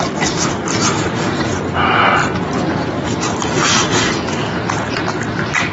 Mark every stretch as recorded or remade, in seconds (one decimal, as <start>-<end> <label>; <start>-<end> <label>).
0.0-5.7 recorded